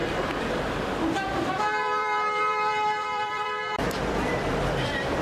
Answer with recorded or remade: remade